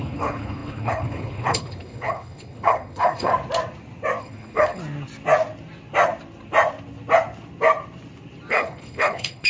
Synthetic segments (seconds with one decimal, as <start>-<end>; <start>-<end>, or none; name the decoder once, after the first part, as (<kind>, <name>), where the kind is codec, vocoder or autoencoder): 0.0-3.3 (codec, HILCodec); 4.2-4.8; 8.5-9.5